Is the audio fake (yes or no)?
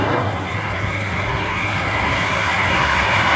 yes